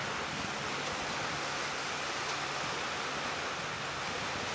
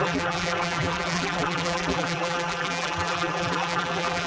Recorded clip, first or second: first